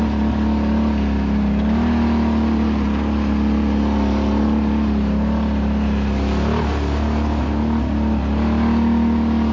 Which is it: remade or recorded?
recorded